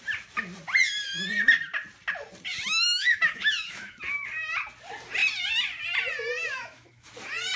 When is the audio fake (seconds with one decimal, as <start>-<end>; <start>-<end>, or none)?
2.5-4.0; 6.4-7.1